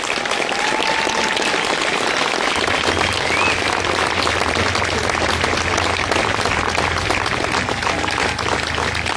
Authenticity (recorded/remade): recorded